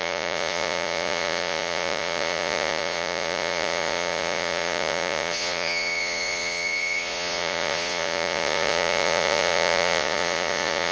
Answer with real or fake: fake